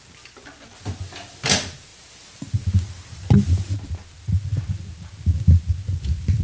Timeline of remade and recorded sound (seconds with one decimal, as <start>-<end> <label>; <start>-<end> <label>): 0.0-6.4 recorded